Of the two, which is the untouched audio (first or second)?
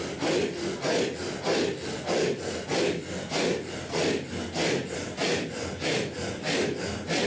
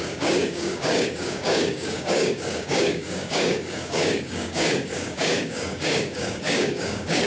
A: first